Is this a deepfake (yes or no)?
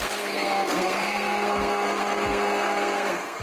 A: yes